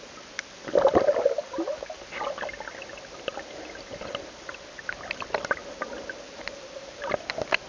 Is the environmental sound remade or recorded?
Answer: recorded